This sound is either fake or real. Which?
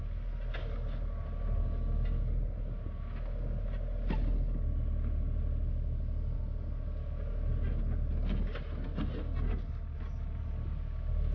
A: real